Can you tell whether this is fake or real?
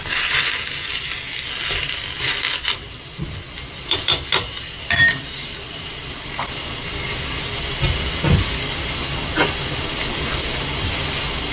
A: real